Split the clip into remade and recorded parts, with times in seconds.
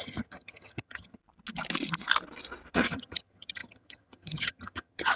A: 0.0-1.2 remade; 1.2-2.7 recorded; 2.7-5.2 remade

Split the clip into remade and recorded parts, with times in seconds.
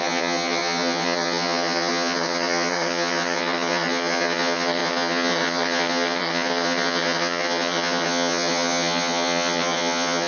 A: 0.0-10.3 remade